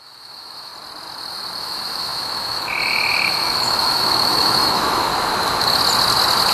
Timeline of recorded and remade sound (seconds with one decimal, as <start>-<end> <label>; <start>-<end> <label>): 0.0-0.7 remade; 0.7-1.6 recorded; 1.6-5.1 remade; 5.1-6.5 recorded